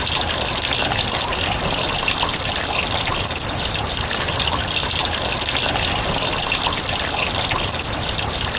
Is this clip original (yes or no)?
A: yes